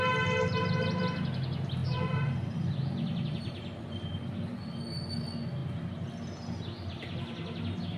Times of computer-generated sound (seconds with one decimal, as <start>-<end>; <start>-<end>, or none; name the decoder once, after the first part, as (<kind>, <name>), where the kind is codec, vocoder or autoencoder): 1.8-4.7 (vocoder, BigVGAN v2)